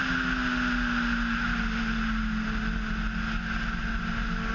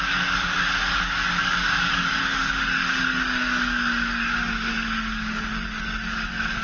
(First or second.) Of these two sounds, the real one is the first